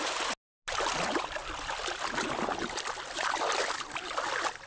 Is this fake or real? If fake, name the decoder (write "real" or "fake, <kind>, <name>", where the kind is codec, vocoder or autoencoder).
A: real